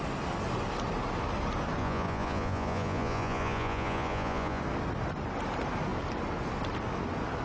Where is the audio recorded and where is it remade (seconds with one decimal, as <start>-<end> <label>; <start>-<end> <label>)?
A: 0.0-1.8 recorded; 1.8-4.6 remade; 4.6-7.4 recorded